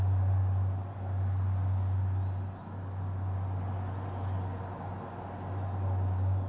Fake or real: real